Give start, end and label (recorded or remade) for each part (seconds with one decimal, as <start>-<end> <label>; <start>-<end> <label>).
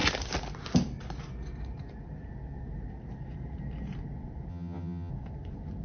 0.0-4.5 recorded; 4.5-5.1 remade; 5.1-5.8 recorded